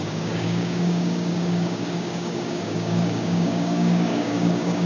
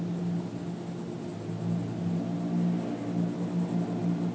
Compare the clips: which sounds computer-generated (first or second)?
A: first